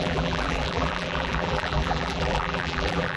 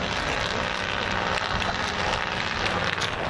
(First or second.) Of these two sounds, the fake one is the first